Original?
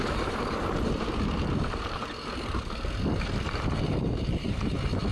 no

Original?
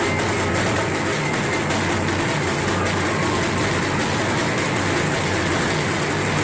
yes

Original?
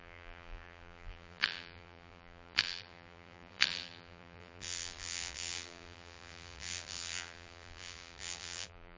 no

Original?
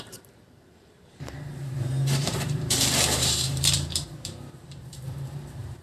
no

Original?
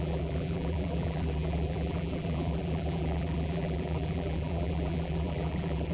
no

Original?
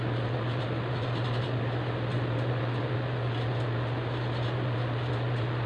yes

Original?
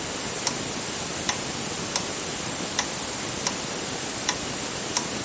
yes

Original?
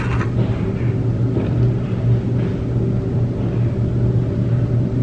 yes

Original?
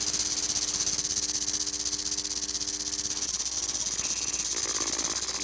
yes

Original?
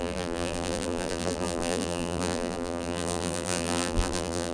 no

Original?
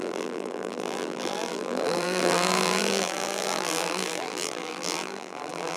no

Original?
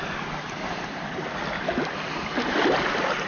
yes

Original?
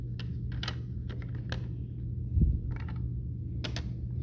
yes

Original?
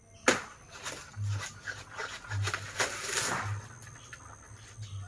yes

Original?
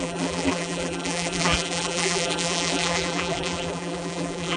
no